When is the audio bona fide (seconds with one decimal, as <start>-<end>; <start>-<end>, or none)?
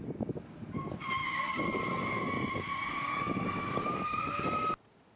0.0-1.2; 4.2-5.2